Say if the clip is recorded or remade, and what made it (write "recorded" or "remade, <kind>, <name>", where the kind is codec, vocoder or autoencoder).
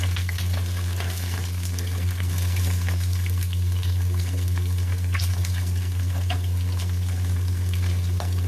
remade, codec, SNAC